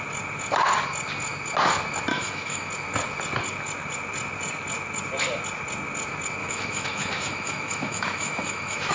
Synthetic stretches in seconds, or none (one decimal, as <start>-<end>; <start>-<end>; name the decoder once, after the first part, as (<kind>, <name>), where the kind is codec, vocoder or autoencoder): 2.1-2.7 (autoencoder, DAC-VAE); 6.4-8.9